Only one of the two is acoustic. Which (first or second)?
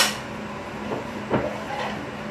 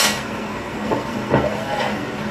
first